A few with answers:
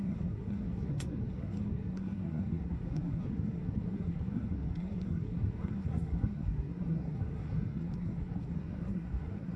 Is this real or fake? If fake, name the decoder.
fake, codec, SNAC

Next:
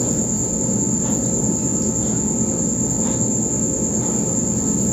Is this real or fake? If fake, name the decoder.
real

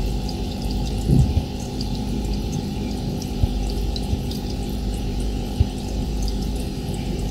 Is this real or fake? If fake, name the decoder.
fake, vocoder, BigVGAN v2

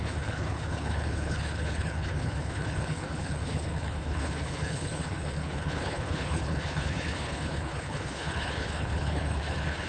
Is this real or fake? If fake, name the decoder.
fake, codec, HILCodec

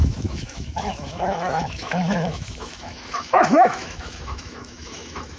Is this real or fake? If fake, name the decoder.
fake, autoencoder, DAC-VAE